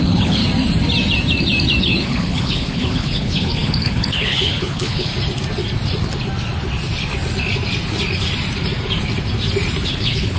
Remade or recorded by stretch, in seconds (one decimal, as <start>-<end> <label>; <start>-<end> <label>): 0.0-0.4 remade; 0.4-1.8 recorded; 1.8-5.1 remade; 5.1-9.9 recorded; 9.9-10.4 remade